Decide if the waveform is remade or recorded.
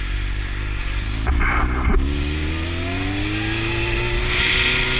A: recorded